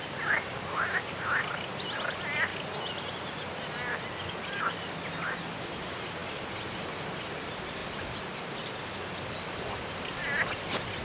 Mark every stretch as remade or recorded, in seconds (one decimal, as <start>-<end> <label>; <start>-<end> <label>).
0.0-11.0 recorded